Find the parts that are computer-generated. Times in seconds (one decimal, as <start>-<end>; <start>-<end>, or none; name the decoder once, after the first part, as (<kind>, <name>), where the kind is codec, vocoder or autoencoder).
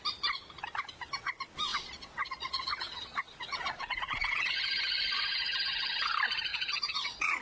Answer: 1.7-6.1 (vocoder, Vocos); 6.5-7.4